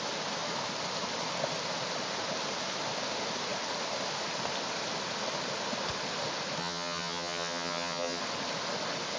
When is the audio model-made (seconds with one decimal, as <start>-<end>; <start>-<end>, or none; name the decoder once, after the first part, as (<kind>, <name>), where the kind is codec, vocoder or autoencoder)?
6.6-8.2 (vocoder, HiFi-GAN)